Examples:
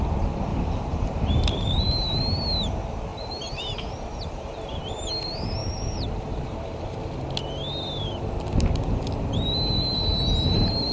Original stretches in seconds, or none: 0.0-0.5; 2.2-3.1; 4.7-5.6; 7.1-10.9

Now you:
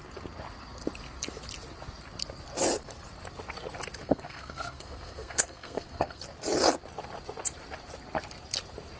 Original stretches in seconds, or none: 0.0-4.0; 6.2-9.0

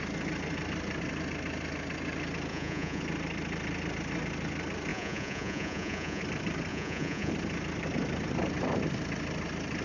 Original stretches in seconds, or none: 0.0-2.5; 3.0-4.9; 6.2-6.7; 7.3-9.8

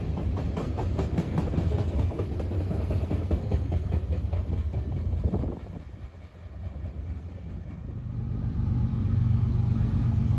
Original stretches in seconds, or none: 0.0-0.6; 4.9-6.9; 7.5-8.9

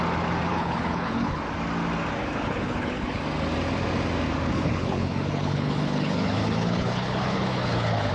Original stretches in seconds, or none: 0.0-0.5; 1.4-2.2; 3.2-4.5

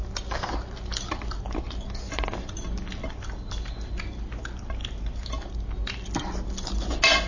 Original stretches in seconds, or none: 0.0-7.3